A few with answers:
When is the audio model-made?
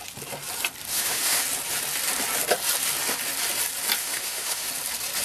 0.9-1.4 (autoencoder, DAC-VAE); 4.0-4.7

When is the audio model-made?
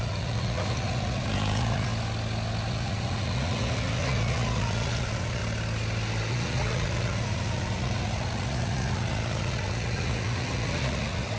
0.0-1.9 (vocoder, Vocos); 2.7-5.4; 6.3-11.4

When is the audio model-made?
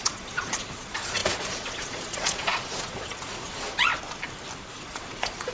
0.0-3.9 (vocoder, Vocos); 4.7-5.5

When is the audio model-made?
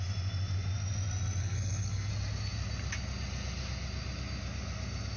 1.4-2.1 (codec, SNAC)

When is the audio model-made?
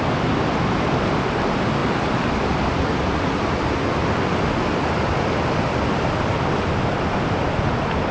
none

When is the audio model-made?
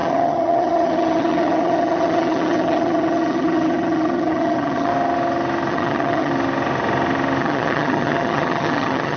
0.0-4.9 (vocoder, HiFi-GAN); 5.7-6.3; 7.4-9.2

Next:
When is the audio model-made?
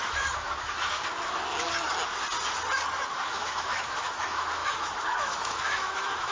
0.0-1.0 (autoencoder, DAC-VAE); 3.2-6.3